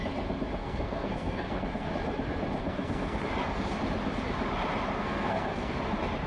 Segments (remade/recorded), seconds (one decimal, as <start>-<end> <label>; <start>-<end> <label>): 0.0-0.6 recorded; 0.6-1.9 remade; 1.9-2.6 recorded; 2.6-3.2 remade; 3.2-5.0 recorded; 5.0-5.7 remade; 5.7-6.3 recorded